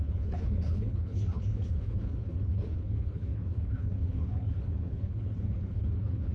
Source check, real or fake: fake